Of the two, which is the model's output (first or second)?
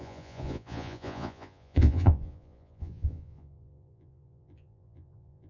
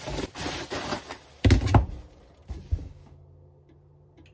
first